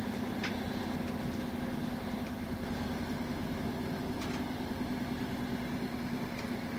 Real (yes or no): yes